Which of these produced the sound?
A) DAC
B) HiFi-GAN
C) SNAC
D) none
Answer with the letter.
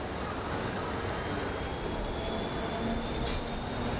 D